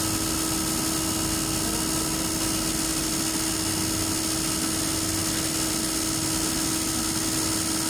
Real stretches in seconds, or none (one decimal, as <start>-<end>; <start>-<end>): 0.0-7.9